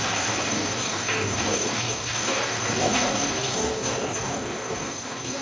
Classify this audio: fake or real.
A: fake